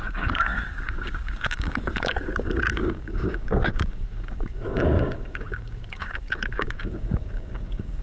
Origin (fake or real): fake